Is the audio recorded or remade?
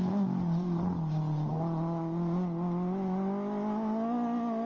recorded